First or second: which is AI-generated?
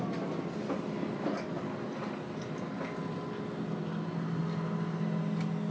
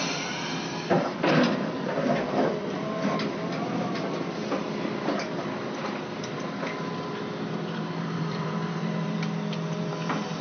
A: second